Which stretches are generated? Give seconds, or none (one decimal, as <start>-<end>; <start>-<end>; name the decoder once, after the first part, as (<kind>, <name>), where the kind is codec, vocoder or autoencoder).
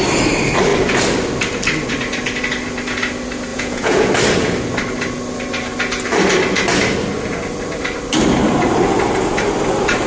3.5-4.1 (vocoder, Vocos)